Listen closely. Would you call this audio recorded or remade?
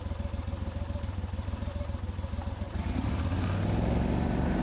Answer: recorded